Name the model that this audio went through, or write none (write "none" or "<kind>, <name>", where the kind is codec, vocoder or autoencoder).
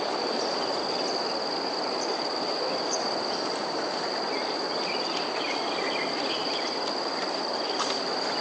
none